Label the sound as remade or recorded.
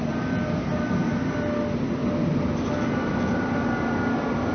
recorded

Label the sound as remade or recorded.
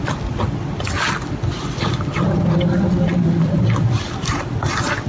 recorded